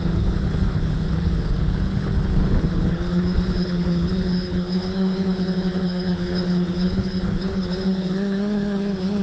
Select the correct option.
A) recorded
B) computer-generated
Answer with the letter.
B